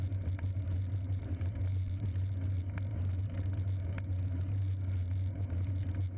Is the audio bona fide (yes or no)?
yes